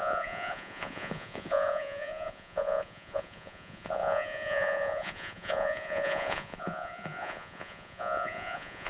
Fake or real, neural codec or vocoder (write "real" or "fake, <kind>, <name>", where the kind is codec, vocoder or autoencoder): fake, vocoder, Vocos